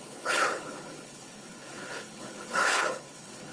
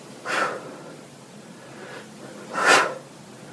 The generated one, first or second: first